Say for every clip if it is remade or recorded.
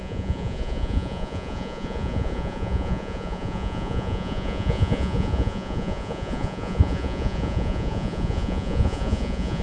remade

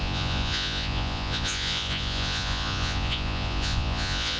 remade